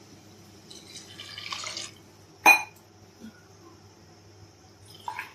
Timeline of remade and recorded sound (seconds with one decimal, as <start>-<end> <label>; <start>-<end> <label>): 0.0-0.7 remade; 0.7-2.3 recorded; 2.3-5.3 remade